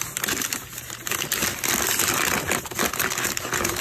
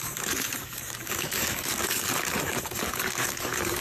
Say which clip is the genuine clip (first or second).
first